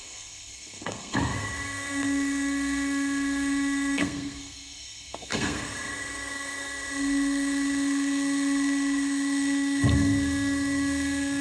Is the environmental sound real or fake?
fake